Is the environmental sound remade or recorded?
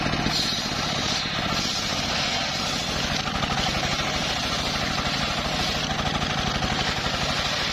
recorded